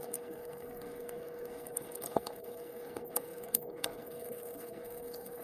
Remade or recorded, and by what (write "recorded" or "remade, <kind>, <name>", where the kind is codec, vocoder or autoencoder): remade, codec, SNAC